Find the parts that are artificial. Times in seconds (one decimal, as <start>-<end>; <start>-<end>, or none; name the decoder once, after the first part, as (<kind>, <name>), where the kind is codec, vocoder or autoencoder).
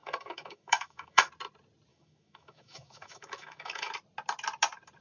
0.0-1.3 (autoencoder, DAC-VAE); 1.9-3.9